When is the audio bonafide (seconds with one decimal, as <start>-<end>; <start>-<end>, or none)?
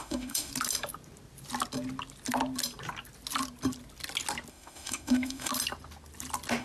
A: 0.5-4.5; 5.5-6.6